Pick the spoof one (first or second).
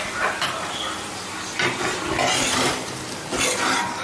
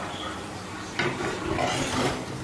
second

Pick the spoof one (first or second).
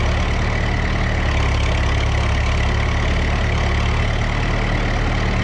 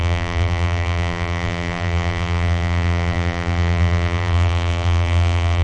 second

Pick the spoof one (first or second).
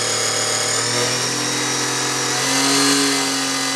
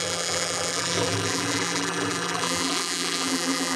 second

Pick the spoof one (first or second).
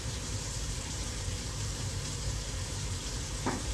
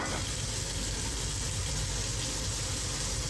first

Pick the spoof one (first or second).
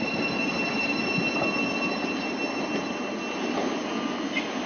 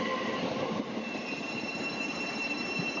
second